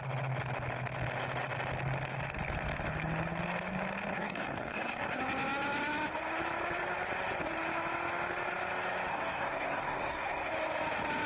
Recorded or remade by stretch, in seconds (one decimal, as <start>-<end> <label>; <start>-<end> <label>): 0.0-4.1 recorded; 4.1-5.2 remade; 5.2-9.1 recorded; 9.1-10.5 remade; 10.5-11.3 recorded